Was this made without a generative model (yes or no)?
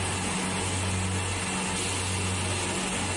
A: yes